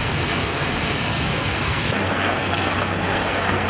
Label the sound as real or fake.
fake